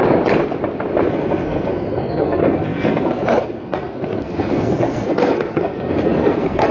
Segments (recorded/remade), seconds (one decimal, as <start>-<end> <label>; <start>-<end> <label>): 0.0-1.1 recorded; 1.1-6.7 remade